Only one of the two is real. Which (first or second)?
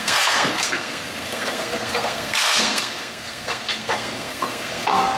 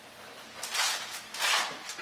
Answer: second